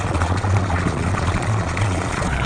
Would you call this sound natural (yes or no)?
no